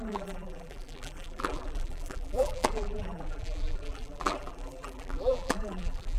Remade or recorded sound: remade